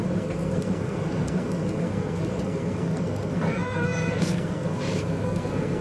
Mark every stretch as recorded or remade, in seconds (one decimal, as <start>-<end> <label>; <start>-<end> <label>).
0.0-5.8 remade